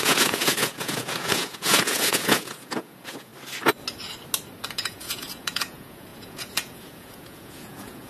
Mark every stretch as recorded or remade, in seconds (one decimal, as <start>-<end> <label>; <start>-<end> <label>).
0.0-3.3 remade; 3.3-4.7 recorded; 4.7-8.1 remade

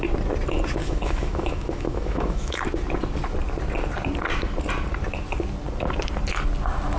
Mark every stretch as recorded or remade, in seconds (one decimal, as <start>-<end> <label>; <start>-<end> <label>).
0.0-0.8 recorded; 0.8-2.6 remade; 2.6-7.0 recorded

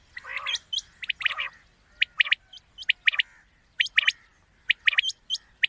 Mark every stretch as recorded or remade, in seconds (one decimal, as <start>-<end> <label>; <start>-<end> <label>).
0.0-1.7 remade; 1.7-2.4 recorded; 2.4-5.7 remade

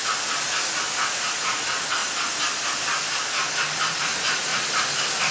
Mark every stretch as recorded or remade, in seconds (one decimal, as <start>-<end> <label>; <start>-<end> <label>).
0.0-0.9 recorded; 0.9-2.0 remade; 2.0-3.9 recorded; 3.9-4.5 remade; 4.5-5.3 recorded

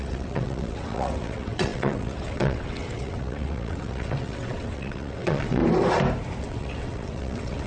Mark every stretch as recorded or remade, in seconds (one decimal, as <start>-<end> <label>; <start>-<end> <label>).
0.0-5.6 remade; 5.6-6.4 recorded; 6.4-7.7 remade

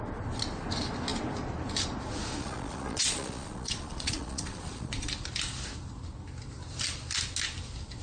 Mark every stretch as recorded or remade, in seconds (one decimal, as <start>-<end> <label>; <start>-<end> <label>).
0.0-2.4 recorded; 2.4-5.1 remade; 5.1-8.0 recorded

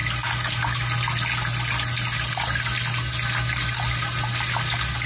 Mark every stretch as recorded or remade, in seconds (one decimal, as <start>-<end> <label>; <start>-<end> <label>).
0.0-5.1 recorded

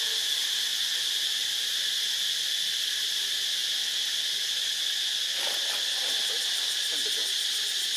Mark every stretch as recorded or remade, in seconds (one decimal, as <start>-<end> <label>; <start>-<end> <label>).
0.0-8.0 recorded